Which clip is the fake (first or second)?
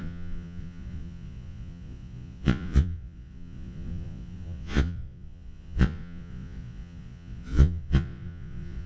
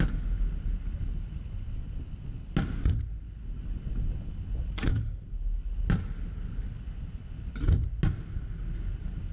first